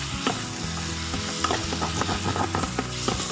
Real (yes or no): yes